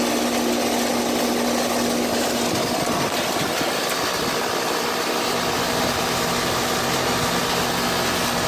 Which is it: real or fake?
real